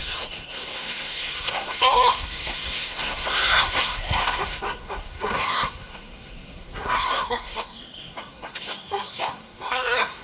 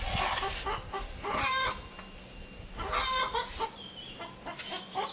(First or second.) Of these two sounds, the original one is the second